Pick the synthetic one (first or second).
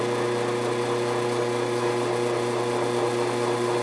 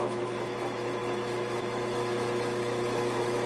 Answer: second